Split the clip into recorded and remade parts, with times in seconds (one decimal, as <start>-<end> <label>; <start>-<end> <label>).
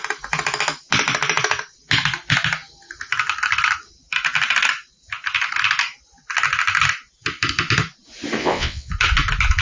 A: 0.0-8.4 recorded; 8.4-8.9 remade; 8.9-9.6 recorded